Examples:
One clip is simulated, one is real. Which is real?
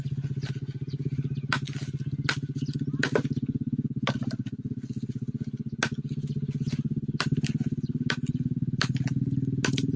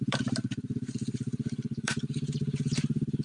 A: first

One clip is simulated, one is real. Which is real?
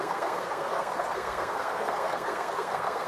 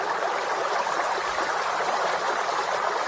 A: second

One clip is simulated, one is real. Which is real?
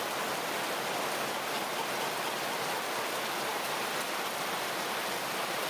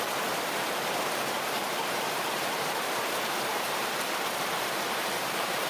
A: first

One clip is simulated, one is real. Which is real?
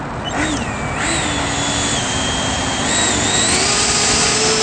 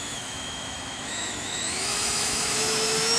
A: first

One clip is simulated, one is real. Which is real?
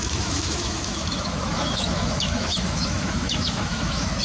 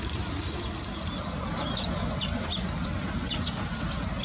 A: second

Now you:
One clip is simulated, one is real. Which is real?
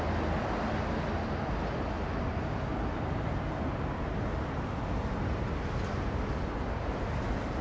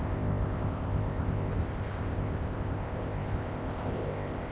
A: first